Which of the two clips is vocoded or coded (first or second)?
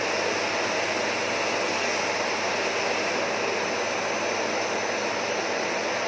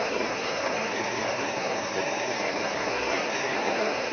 second